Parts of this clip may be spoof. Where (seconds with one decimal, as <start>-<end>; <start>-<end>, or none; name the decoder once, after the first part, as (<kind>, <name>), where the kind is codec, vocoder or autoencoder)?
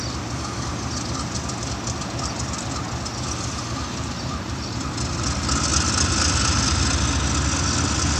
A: 3.9-4.8 (vocoder, BigVGAN v2)